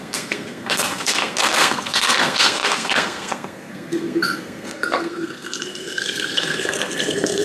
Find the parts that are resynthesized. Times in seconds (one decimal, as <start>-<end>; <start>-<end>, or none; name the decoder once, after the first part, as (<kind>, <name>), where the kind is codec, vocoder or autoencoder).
0.0-7.4 (codec, SNAC)